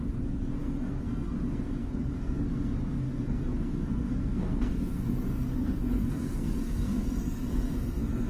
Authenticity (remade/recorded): remade